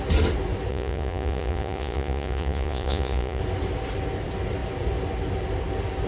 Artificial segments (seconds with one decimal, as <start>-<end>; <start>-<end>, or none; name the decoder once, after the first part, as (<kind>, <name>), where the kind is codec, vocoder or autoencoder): 0.7-3.4 (vocoder, Vocos)